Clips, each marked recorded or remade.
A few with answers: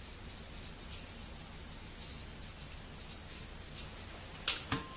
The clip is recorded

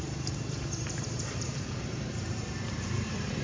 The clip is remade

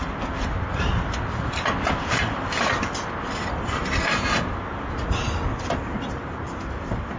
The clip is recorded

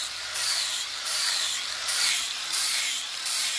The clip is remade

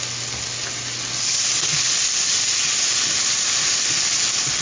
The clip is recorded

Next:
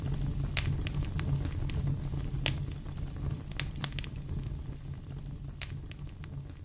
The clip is recorded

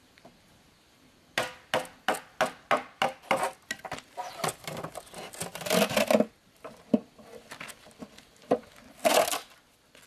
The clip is recorded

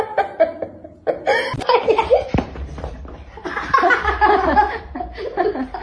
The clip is remade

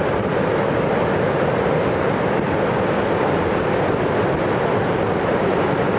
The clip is recorded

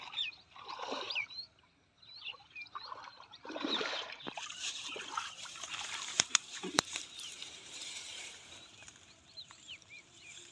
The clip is remade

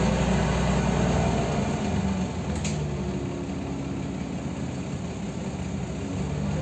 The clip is recorded